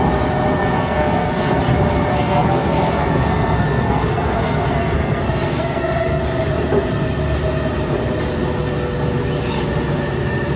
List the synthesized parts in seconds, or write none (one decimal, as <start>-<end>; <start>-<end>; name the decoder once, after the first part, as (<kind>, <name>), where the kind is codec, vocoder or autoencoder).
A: 0.6-1.6 (codec, SNAC); 2.1-6.2